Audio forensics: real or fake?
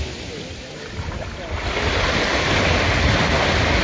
real